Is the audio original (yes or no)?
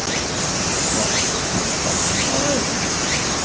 yes